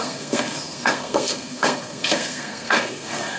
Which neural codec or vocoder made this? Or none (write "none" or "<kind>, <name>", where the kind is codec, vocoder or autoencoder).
codec, SNAC